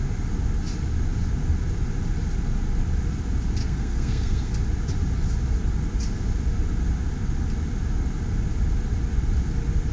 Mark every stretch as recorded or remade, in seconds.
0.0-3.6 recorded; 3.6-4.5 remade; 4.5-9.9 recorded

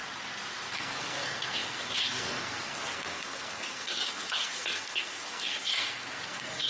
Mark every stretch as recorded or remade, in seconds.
0.0-0.7 recorded; 0.7-6.7 remade

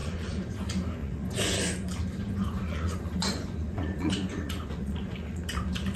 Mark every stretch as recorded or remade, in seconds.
0.0-0.6 remade; 0.6-1.0 recorded; 1.0-1.6 remade; 1.6-2.2 recorded; 2.2-5.4 remade; 5.4-6.0 recorded